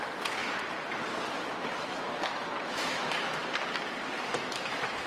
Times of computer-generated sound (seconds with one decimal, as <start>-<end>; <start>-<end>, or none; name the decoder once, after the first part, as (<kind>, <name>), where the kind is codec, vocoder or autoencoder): 0.0-0.4 (autoencoder, DAC-VAE); 1.3-3.4; 4.5-5.1